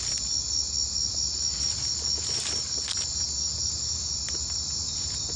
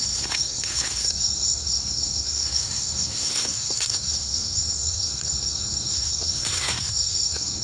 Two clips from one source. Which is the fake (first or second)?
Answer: second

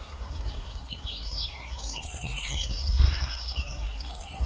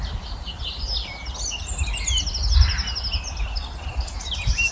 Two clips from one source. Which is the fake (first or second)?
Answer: first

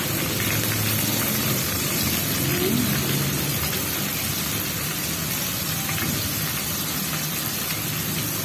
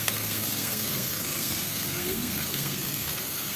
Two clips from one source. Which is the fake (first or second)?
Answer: second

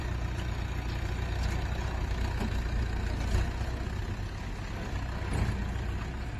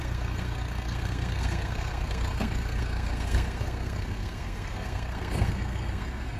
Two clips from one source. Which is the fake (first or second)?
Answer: second